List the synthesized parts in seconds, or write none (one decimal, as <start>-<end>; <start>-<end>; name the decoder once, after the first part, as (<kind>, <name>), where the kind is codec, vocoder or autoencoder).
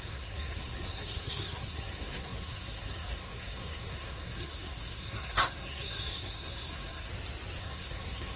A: 0.0-7.1 (codec, SNAC); 7.6-8.4